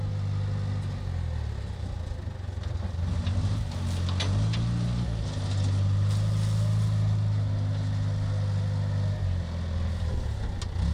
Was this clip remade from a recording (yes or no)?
no